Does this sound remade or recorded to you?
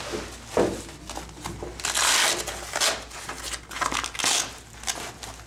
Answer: recorded